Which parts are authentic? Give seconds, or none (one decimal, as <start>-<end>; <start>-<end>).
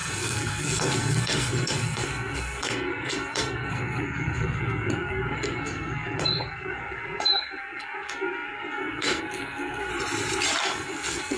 9.9-10.6